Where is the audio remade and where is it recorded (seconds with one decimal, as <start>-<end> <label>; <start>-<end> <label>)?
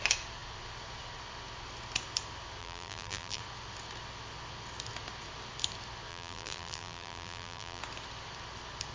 0.0-2.6 recorded; 2.6-3.4 remade; 3.4-6.1 recorded; 6.1-7.8 remade; 7.8-8.9 recorded